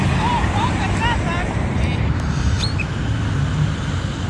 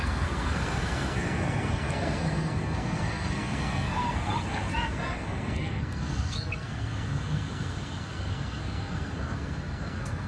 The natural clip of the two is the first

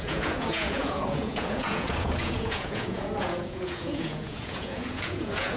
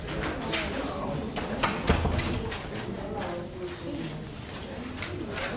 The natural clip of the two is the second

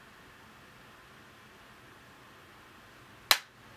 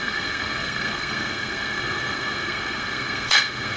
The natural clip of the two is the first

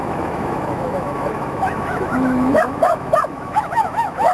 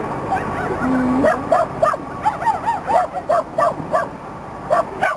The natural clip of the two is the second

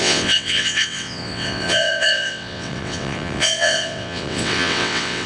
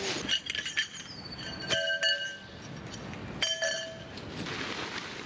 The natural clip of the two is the second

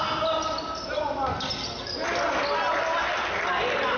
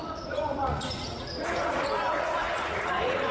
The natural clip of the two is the first